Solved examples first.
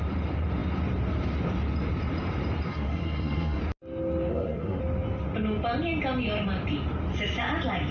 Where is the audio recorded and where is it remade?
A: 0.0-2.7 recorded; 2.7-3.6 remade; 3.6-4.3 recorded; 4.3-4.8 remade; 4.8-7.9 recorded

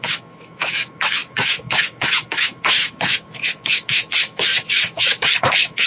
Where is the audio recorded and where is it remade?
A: 0.0-5.9 remade

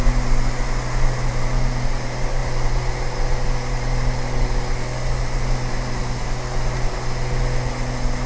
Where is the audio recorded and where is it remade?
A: 0.0-8.3 recorded

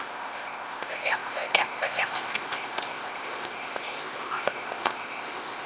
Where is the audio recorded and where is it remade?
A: 0.0-5.7 remade

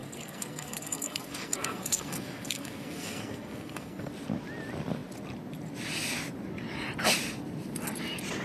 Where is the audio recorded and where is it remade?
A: 0.0-4.1 remade; 4.1-8.4 recorded